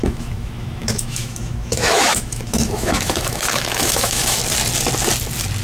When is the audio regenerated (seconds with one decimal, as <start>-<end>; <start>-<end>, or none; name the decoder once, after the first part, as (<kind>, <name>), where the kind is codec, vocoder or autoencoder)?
0.0-4.4 (autoencoder, DAC-VAE)